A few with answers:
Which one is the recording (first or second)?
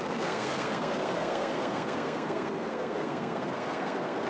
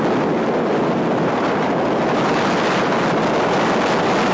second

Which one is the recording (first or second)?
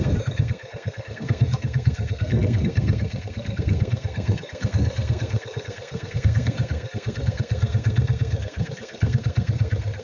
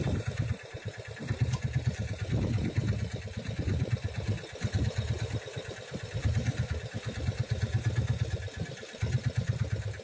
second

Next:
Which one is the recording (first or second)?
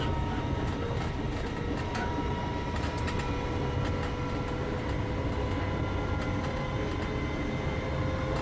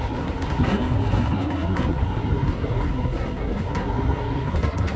first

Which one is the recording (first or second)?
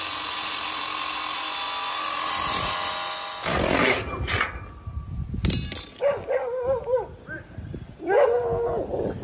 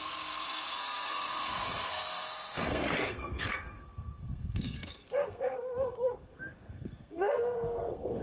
first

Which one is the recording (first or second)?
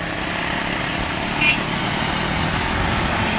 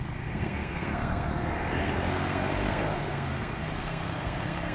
first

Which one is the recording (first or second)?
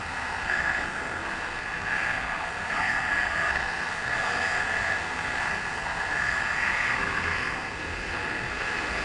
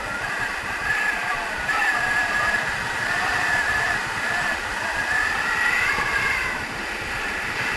second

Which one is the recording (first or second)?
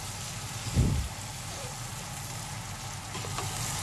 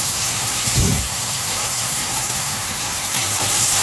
first